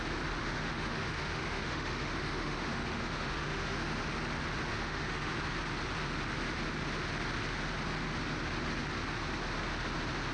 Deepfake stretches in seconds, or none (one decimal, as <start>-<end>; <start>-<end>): 0.4-4.0; 4.7-5.3